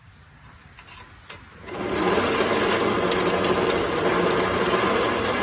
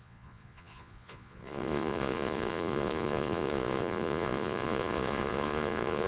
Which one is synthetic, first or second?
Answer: second